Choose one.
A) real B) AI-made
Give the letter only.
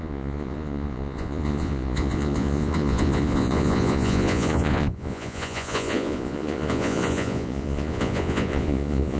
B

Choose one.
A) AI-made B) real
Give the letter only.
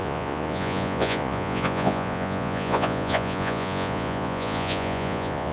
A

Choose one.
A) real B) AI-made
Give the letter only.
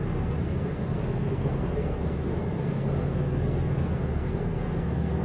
B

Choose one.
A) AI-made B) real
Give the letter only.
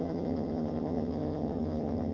A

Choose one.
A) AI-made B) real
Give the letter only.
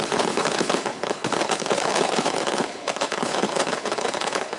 A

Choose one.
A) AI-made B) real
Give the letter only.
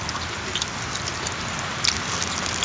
B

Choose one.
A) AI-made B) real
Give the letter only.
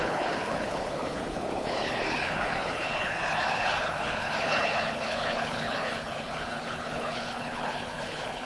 A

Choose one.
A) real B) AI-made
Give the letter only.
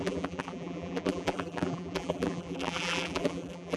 B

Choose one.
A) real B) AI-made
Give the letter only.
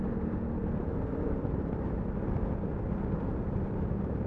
A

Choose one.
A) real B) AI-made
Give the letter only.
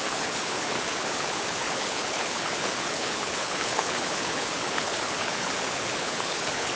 B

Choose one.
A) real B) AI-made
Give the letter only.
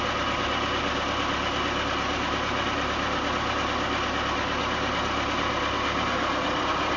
A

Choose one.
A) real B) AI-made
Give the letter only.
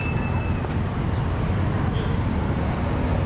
A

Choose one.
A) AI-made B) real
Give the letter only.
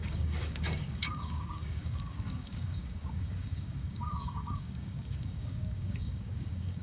A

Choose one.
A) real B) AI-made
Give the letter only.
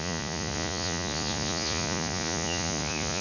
B